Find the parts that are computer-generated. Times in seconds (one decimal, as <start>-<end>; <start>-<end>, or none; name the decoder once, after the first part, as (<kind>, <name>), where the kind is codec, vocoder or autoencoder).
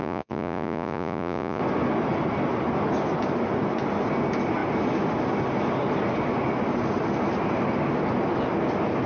0.0-1.6 (vocoder, Vocos)